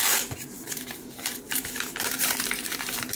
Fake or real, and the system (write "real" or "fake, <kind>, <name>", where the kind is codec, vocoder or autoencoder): fake, vocoder, BigVGAN v2